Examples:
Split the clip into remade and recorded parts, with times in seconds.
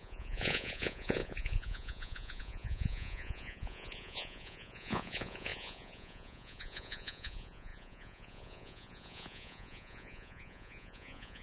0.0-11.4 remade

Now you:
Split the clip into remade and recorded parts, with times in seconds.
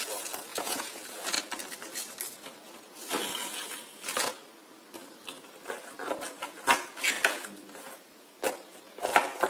0.0-0.5 recorded; 0.5-1.0 remade; 1.0-9.5 recorded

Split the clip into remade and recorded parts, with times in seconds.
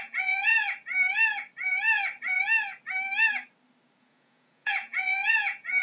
0.0-0.5 remade; 0.5-4.0 recorded; 4.0-5.8 remade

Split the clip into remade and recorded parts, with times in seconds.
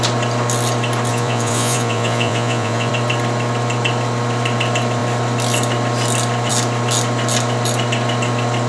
0.0-1.1 recorded; 1.1-2.9 remade; 2.9-8.7 recorded